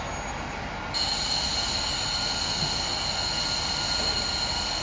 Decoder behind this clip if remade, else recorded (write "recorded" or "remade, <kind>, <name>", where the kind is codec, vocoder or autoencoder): recorded